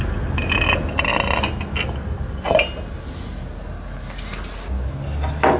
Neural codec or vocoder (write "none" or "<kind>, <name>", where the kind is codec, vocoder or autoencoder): none